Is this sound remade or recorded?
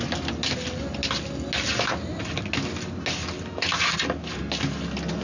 recorded